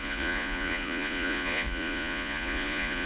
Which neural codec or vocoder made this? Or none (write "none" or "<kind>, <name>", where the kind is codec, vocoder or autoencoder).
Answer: vocoder, Vocos